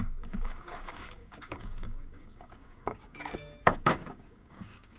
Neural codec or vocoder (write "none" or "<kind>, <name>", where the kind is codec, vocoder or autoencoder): codec, DAC